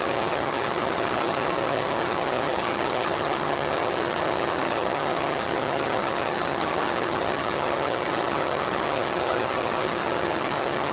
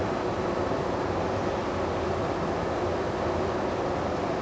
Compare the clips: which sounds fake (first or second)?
first